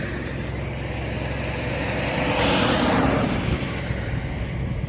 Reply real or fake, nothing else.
real